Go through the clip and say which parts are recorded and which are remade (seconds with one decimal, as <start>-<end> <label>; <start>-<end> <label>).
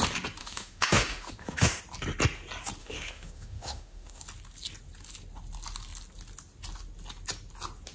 0.0-0.4 recorded; 0.4-1.8 remade; 1.8-2.8 recorded; 2.8-4.2 remade; 4.2-7.9 recorded